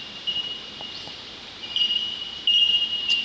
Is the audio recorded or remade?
remade